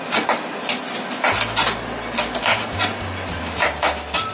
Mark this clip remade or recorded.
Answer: recorded